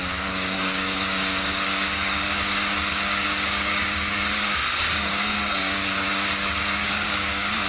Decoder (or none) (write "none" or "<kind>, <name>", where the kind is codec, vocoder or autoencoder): codec, DAC